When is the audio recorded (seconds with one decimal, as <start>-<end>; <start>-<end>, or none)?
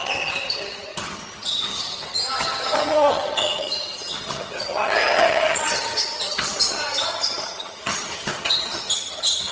none